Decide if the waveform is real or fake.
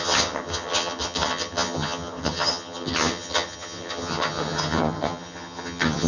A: fake